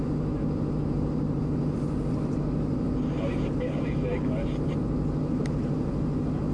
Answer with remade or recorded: recorded